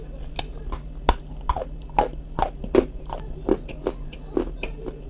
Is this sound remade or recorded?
recorded